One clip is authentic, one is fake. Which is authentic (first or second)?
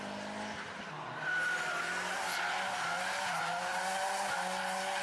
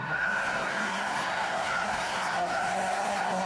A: first